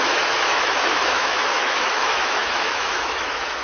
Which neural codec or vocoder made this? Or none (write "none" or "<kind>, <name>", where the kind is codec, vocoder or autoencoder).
autoencoder, DAC-VAE